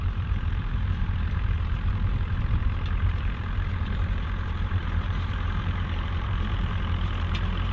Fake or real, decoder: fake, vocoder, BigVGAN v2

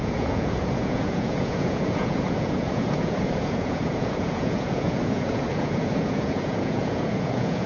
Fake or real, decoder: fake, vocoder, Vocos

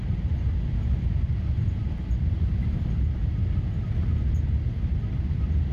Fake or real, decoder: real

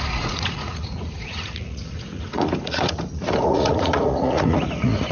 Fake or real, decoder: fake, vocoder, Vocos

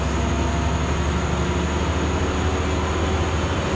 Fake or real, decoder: real